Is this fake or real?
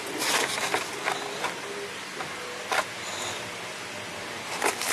real